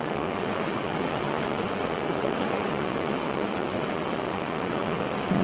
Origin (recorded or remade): remade